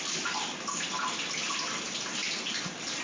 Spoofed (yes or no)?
no